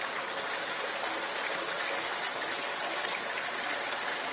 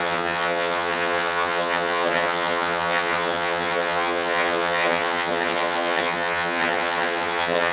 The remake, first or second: second